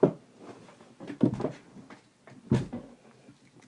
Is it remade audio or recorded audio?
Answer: recorded